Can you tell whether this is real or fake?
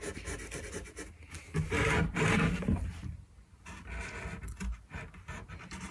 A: real